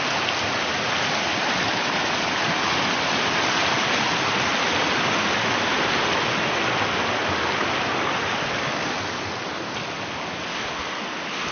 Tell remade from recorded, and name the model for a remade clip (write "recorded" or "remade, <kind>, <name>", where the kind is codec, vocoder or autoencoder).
recorded